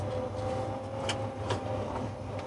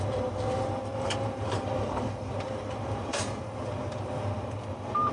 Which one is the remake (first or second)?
second